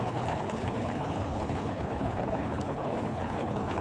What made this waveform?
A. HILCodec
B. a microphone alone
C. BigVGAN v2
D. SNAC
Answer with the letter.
A